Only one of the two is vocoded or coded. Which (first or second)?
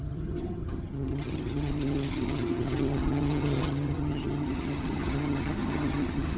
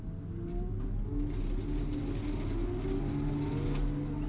first